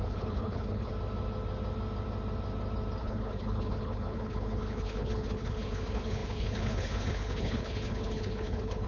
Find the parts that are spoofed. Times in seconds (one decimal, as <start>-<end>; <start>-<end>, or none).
0.0-0.9; 3.0-8.9